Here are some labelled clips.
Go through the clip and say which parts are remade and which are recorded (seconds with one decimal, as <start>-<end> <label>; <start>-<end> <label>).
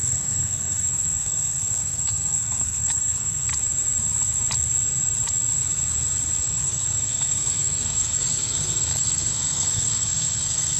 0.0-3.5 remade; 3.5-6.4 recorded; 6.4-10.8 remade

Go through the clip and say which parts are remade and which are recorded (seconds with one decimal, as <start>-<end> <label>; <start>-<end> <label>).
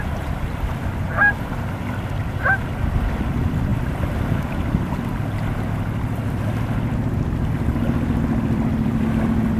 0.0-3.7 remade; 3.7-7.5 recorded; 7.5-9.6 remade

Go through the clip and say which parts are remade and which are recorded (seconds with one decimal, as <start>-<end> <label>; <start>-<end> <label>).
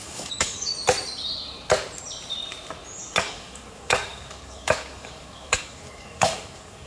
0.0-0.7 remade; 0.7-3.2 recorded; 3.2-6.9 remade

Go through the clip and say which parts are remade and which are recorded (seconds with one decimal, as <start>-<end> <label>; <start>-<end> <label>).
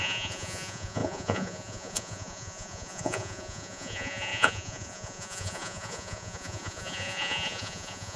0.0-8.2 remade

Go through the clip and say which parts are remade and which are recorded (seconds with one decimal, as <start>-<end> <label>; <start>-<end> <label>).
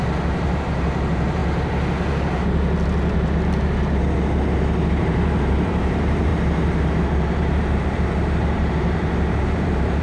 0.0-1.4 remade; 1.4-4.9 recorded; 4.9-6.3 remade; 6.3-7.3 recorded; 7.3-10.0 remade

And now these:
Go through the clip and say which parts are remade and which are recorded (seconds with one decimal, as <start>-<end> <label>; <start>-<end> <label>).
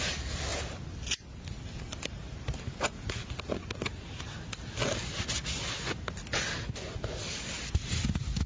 0.0-8.5 recorded